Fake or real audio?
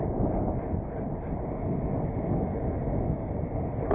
real